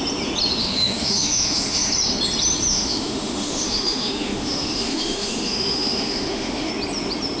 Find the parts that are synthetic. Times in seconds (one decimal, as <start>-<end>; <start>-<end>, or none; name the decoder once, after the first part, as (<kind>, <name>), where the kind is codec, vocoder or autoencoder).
0.6-1.9 (autoencoder, DAC-VAE); 2.7-6.7